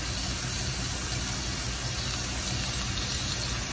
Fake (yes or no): no